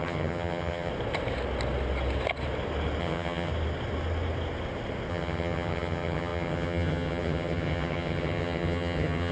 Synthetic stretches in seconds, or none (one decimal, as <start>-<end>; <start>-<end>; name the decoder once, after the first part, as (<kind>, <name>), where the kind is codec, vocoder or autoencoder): 0.0-0.9 (vocoder, HiFi-GAN); 3.0-3.5; 5.1-9.3